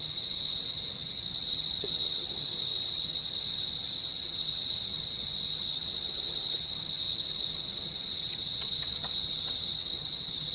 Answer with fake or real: fake